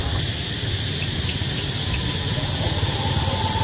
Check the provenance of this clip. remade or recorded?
recorded